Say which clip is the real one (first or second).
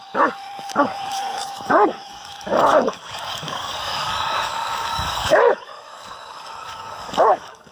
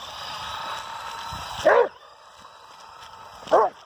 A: second